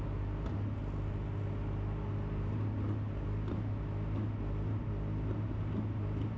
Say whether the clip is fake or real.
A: real